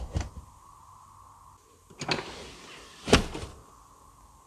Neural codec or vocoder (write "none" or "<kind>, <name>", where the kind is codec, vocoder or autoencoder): none